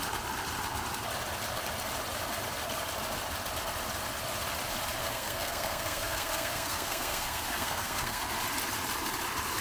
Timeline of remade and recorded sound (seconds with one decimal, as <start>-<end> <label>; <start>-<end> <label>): 0.0-5.0 recorded; 5.0-8.2 remade; 8.2-9.6 recorded